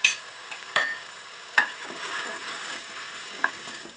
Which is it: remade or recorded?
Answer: remade